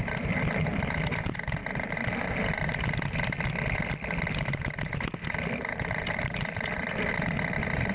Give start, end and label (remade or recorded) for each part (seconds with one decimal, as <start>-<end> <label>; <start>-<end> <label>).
0.0-7.9 recorded